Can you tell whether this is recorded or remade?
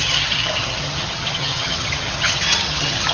remade